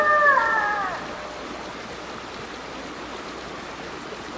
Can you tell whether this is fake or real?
real